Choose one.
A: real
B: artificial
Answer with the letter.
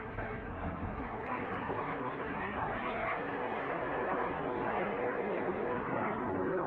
B